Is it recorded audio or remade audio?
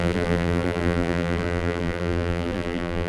remade